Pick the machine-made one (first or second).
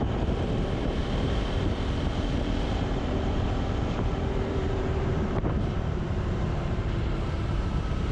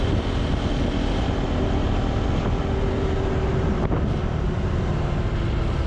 first